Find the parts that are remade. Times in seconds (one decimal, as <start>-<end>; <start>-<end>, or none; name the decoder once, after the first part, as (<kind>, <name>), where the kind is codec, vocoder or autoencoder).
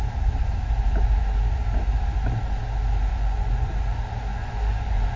3.1-3.7 (vocoder, Vocos); 4.4-5.2